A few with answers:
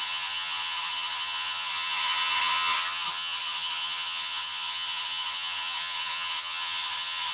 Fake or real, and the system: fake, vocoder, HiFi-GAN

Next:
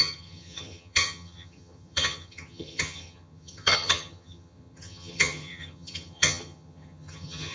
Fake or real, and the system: fake, vocoder, HiFi-GAN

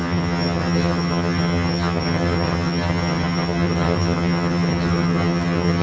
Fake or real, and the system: fake, vocoder, HiFi-GAN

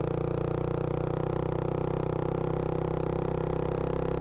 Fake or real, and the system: real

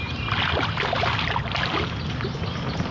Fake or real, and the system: real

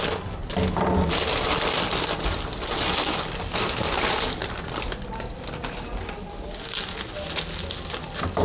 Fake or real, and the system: real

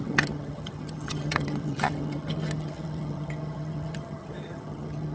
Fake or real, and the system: fake, vocoder, HiFi-GAN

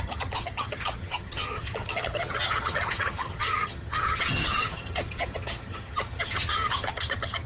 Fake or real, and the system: fake, vocoder, HiFi-GAN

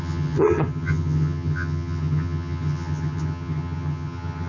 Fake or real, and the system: fake, vocoder, HiFi-GAN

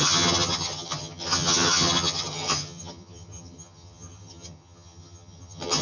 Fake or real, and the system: fake, vocoder, HiFi-GAN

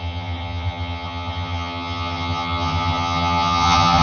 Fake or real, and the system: fake, vocoder, HiFi-GAN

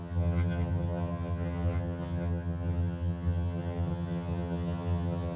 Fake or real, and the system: fake, vocoder, HiFi-GAN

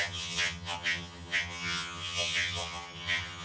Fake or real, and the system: fake, vocoder, HiFi-GAN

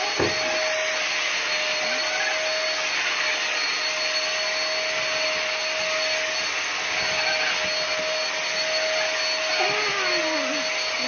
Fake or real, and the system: real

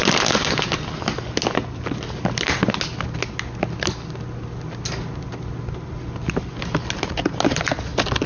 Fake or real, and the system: real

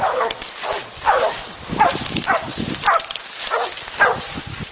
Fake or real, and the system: real